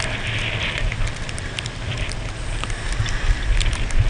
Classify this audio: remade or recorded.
recorded